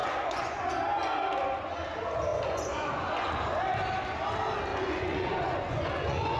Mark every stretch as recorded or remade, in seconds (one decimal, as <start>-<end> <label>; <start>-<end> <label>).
0.0-0.7 remade; 0.7-2.3 recorded; 2.3-3.6 remade; 3.6-4.7 recorded; 4.7-6.4 remade